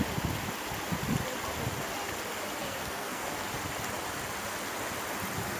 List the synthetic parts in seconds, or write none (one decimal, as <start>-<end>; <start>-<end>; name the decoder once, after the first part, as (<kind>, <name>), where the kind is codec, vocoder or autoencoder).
2.6-3.3 (codec, SNAC)